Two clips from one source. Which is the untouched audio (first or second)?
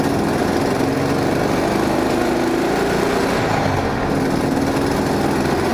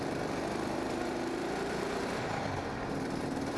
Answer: first